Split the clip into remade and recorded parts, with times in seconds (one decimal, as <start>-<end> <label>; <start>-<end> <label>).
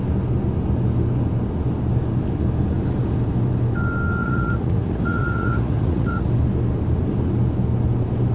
0.0-4.2 recorded; 4.2-6.3 remade; 6.3-8.3 recorded